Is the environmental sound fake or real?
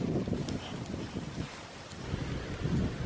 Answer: real